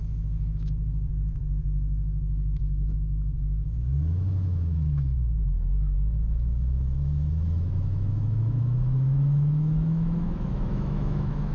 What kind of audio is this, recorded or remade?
remade